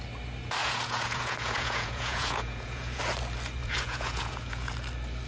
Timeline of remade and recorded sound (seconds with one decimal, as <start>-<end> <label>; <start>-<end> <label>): 0.0-0.6 recorded; 0.6-3.0 remade; 3.0-3.6 recorded; 3.6-4.7 remade; 4.7-5.3 recorded